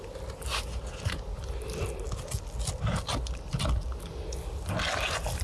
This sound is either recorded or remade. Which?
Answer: recorded